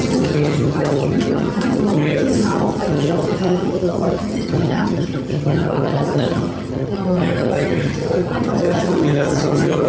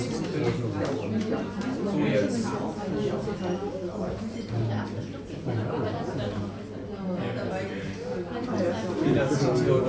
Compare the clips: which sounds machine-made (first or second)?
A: first